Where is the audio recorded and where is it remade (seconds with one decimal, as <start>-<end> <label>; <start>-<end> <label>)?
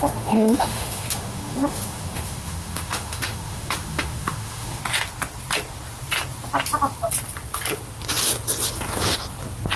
0.0-4.8 remade; 4.8-9.8 recorded